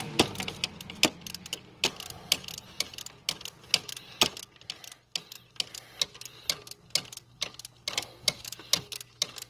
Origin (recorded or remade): recorded